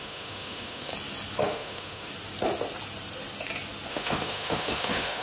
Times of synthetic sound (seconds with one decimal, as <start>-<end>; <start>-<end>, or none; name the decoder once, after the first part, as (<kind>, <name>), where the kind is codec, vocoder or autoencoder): 0.0-0.9 (autoencoder, DAC-VAE); 1.4-2.1; 3.9-5.2